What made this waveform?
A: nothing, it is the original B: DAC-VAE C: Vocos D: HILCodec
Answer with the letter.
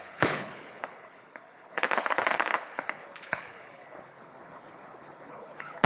D